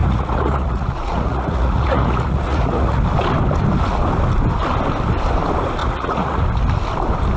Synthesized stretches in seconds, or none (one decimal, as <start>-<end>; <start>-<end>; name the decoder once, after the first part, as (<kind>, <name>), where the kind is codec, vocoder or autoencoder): 0.0-3.0 (vocoder, Vocos); 5.8-6.4